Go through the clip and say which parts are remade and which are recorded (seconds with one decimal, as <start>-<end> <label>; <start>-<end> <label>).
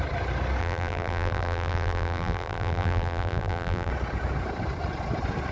0.0-0.6 recorded; 0.6-3.9 remade; 3.9-5.5 recorded